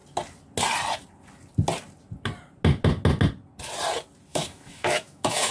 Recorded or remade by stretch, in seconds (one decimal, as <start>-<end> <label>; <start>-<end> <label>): 0.0-4.3 recorded; 4.3-5.5 remade